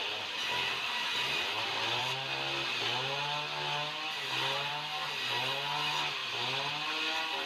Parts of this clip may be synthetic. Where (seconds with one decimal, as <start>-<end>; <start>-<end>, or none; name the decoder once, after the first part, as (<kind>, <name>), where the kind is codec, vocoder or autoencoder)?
none